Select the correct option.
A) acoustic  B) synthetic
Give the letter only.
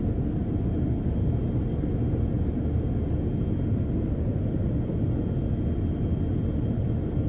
A